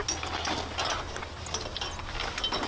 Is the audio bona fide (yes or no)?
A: yes